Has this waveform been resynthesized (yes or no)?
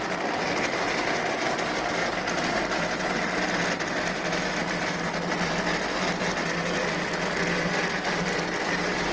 no